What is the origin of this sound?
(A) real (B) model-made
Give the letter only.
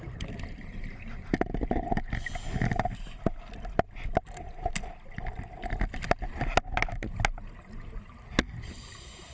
A